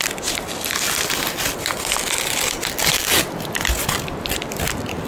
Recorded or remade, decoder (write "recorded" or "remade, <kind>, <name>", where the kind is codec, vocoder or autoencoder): recorded